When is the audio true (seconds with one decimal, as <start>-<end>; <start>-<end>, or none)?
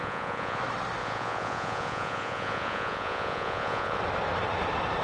0.6-1.0; 4.0-5.0